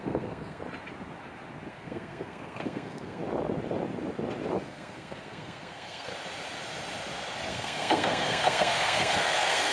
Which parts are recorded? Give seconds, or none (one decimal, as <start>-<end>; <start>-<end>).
0.6-1.7; 3.2-4.6; 6.1-7.5